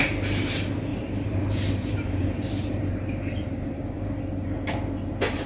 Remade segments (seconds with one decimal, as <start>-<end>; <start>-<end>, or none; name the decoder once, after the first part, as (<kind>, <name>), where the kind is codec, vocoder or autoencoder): 0.9-4.2 (vocoder, BigVGAN v2)